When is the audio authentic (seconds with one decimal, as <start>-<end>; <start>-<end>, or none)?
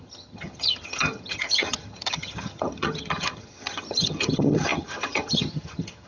none